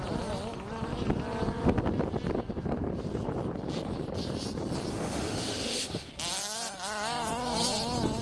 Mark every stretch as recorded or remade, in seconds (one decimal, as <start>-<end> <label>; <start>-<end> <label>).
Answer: 0.0-4.9 recorded; 4.9-6.1 remade; 6.1-8.2 recorded